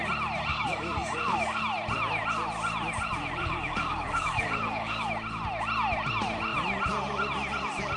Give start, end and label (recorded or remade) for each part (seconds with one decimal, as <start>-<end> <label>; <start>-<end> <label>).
0.0-0.5 recorded; 0.5-1.6 remade; 1.6-3.4 recorded; 3.4-5.1 remade; 5.1-8.0 recorded